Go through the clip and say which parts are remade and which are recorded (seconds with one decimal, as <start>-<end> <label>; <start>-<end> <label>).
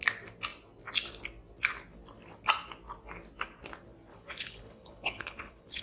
0.0-4.1 recorded; 4.1-5.8 remade